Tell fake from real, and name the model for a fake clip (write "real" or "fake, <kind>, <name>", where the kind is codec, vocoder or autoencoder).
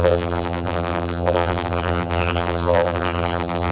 fake, vocoder, BigVGAN v2